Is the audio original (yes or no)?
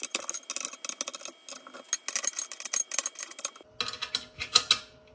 yes